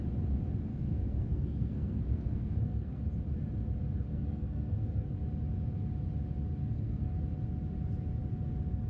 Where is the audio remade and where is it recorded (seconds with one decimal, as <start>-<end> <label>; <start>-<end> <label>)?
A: 0.0-0.7 recorded; 0.7-3.0 remade; 3.0-4.1 recorded; 4.1-5.1 remade; 5.1-6.6 recorded; 6.6-7.2 remade; 7.2-8.9 recorded